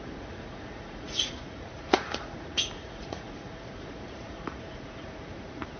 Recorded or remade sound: remade